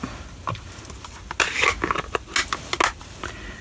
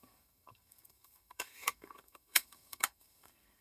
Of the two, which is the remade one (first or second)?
second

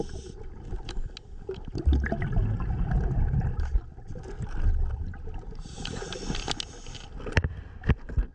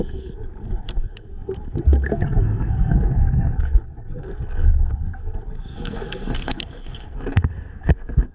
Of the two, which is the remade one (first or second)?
second